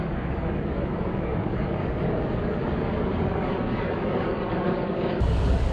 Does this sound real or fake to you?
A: fake